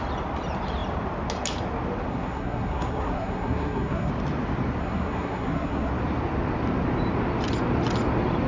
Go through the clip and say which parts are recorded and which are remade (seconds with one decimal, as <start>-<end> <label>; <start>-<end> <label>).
0.0-2.1 recorded; 2.1-4.1 remade; 4.1-4.8 recorded; 4.8-5.9 remade; 5.9-8.5 recorded